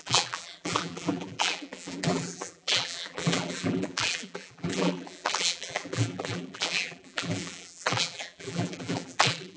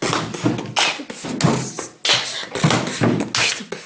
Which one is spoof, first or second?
first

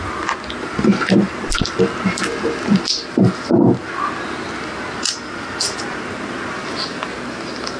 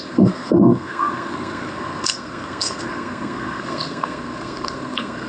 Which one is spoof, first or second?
second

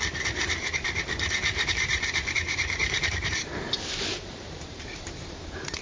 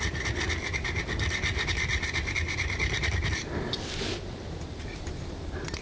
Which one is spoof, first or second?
first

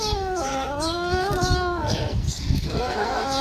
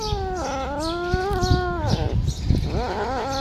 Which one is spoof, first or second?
first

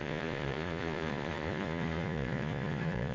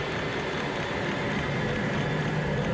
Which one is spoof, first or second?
first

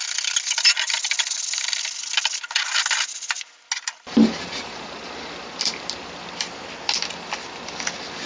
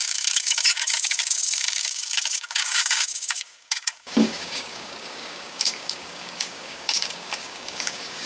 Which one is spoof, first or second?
second